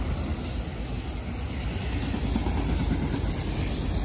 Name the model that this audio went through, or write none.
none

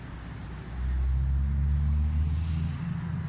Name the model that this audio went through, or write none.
none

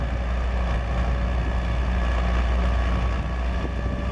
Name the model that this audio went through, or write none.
none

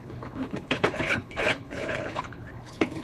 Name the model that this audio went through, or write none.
codec, HILCodec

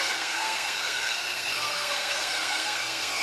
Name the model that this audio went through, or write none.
codec, SNAC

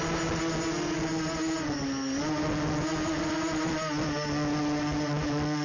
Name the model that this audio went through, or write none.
none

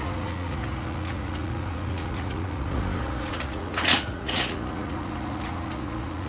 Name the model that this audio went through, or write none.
vocoder, Vocos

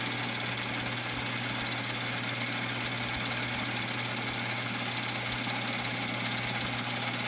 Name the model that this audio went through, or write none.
none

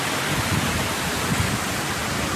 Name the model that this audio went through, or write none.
none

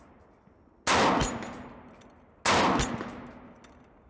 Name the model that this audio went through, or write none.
none